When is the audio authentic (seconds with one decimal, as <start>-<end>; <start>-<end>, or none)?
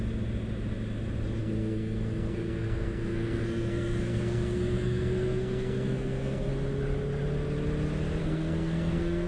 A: 0.0-1.4; 6.5-8.2